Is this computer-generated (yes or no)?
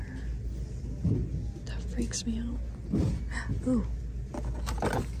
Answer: no